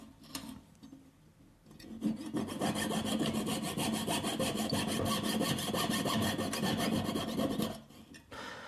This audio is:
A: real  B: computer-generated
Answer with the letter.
A